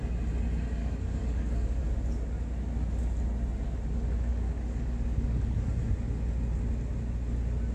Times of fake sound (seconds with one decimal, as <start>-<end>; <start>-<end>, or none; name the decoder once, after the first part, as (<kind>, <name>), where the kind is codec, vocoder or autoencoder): 0.8-1.8 (codec, DAC); 4.3-5.7